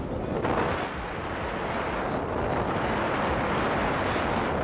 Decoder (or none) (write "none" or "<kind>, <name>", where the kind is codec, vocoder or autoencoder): none